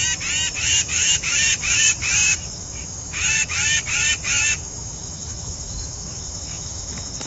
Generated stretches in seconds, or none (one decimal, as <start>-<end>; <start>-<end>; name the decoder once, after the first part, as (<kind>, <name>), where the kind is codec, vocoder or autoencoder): 0.6-7.3 (autoencoder, DAC-VAE)